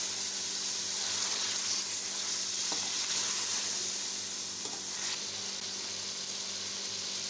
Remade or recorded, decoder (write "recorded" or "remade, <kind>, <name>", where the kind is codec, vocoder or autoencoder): recorded